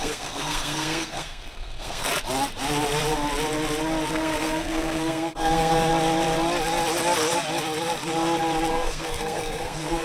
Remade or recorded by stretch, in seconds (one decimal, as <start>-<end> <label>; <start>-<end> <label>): 0.0-2.1 remade; 2.1-4.1 recorded; 4.1-5.9 remade; 5.9-8.7 recorded; 8.7-10.0 remade